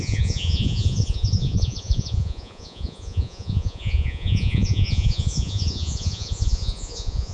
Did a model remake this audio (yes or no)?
yes